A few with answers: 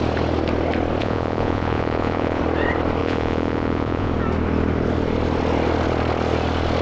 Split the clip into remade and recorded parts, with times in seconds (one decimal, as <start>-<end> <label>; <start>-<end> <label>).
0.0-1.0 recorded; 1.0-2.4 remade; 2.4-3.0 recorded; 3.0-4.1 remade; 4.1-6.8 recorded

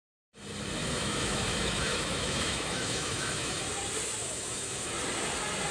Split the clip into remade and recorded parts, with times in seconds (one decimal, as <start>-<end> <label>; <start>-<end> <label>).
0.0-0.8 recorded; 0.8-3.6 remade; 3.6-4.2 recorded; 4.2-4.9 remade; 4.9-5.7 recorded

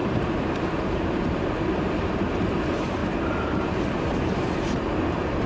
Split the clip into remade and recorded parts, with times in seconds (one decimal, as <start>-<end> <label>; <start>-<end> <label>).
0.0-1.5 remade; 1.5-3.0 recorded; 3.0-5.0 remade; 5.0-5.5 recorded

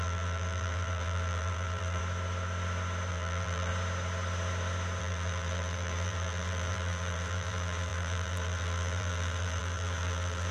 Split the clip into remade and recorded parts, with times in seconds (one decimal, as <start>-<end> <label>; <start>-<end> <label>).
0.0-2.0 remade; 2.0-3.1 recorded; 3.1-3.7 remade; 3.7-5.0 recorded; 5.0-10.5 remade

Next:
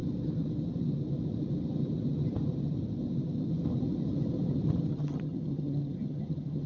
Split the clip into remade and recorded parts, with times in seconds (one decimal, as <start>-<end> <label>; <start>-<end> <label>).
0.0-4.9 recorded; 4.9-6.7 remade